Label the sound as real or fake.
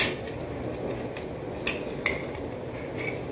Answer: real